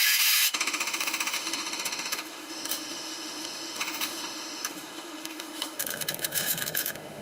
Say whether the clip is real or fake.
fake